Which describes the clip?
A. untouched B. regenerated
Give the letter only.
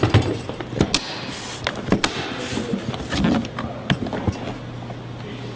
A